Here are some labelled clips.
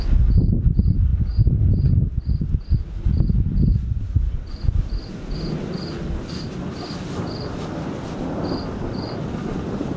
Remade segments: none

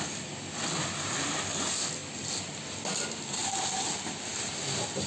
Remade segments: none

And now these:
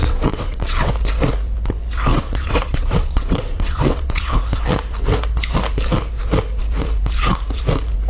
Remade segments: 0.0-0.9 (vocoder, WaveNeXt); 2.1-4.4

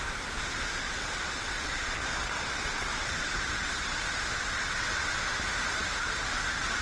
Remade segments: 0.8-1.7 (vocoder, WaveNeXt); 2.2-4.0; 4.4-5.1

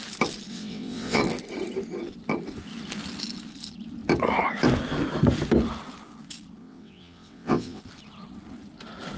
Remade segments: 0.5-1.2 (vocoder, WaveNeXt); 6.6-7.8